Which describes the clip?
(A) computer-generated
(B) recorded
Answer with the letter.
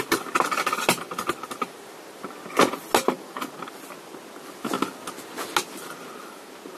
B